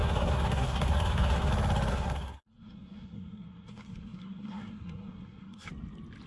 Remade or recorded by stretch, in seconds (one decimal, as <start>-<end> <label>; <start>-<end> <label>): 0.0-1.5 remade; 1.5-1.9 recorded; 1.9-5.7 remade; 5.7-6.3 recorded